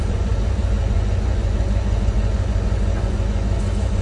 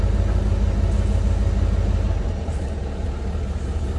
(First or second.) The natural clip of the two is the second